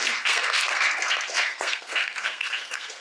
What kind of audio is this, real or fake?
fake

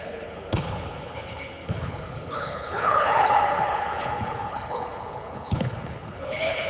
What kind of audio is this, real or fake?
fake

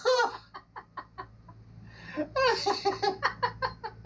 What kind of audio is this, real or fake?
real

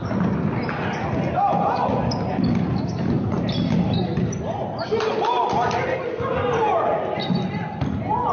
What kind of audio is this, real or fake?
real